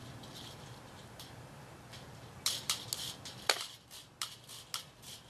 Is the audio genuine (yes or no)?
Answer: yes